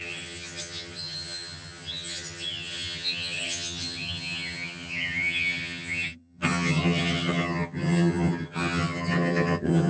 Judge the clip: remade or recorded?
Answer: remade